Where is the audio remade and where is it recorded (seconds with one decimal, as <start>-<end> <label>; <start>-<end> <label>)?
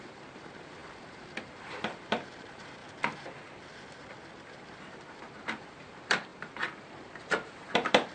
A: 0.0-0.8 remade; 0.8-1.4 recorded; 1.4-2.8 remade; 2.8-4.6 recorded; 4.6-8.1 remade